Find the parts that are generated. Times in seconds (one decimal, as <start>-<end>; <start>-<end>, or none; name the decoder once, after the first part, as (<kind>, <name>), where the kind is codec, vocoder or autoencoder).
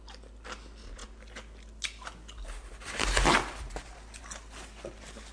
none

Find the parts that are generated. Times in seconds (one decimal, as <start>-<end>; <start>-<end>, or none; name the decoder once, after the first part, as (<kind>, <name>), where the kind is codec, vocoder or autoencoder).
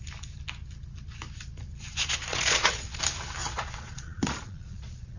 2.3-3.0 (vocoder, Vocos); 3.4-5.2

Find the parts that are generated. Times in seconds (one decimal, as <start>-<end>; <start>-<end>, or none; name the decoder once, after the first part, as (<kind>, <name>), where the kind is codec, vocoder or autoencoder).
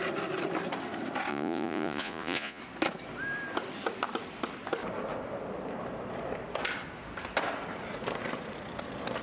1.3-2.6 (vocoder, Vocos)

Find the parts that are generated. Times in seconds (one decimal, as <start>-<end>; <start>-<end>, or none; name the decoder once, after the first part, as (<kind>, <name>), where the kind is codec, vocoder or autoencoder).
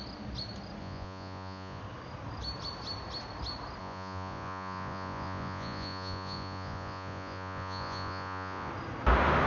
0.8-1.8 (vocoder, Vocos); 3.8-8.7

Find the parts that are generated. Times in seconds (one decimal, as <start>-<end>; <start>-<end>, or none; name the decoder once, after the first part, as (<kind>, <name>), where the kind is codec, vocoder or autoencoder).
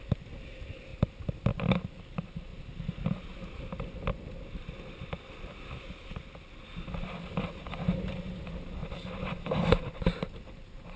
none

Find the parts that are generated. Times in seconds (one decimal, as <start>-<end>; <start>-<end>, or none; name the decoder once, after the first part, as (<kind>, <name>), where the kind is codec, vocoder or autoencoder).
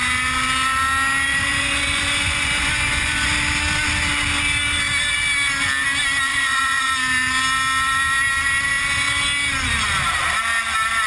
1.3-3.3 (vocoder, Vocos); 6.3-6.9